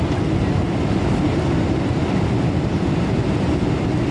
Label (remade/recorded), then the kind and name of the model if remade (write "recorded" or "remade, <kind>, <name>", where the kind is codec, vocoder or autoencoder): remade, vocoder, BigVGAN v2